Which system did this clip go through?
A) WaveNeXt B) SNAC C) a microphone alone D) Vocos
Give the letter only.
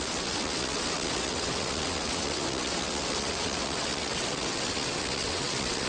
A